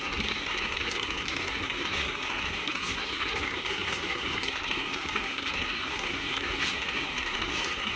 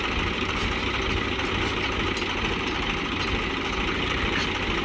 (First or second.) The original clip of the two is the second